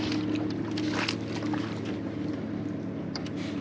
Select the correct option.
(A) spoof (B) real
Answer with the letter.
B